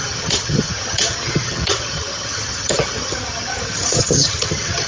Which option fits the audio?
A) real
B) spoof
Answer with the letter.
B